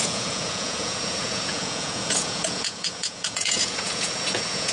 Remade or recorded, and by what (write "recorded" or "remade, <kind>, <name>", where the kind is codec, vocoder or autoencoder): remade, vocoder, Vocos